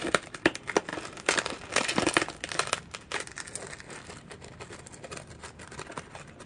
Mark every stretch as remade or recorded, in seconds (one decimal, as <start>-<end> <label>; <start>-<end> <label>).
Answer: 0.0-6.5 recorded